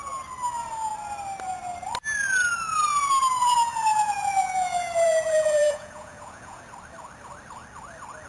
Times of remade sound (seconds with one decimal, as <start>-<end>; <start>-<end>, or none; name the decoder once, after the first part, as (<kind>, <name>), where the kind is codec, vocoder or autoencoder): 3.4-6.6 (vocoder, Vocos)